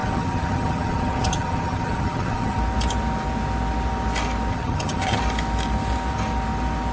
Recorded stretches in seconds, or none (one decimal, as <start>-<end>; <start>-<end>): 2.6-4.5; 5.2-6.9